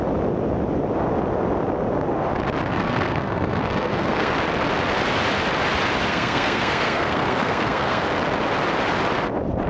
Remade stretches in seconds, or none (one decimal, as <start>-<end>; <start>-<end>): 2.7-4.3; 6.1-8.0